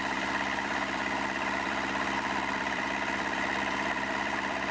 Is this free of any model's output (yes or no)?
no